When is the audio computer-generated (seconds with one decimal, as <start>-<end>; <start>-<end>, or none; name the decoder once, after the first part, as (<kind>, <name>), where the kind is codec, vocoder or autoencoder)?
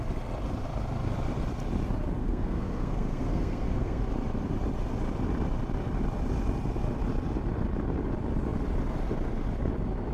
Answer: 2.2-4.0 (codec, SNAC)